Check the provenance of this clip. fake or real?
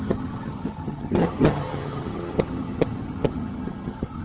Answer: fake